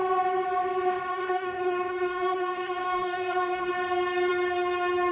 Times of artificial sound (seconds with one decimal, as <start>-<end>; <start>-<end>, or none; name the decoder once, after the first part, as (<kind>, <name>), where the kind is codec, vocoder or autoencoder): 1.1-3.7 (codec, DAC)